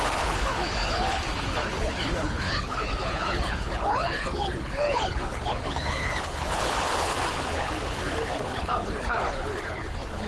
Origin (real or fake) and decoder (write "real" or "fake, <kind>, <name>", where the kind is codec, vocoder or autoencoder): fake, codec, HILCodec